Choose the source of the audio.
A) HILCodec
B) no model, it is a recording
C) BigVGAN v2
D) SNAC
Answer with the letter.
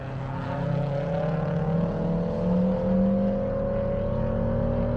B